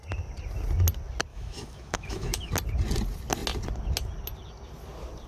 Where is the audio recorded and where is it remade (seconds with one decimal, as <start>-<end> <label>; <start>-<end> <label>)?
0.0-1.3 recorded; 1.3-2.5 remade; 2.5-5.3 recorded